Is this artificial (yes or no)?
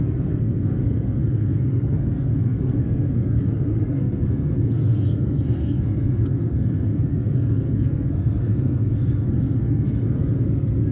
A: yes